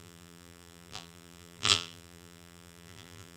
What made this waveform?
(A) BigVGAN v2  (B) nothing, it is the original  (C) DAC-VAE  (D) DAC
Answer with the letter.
A